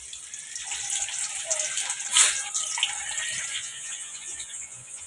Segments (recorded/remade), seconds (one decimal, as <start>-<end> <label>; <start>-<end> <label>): 0.0-3.5 recorded; 3.5-5.1 remade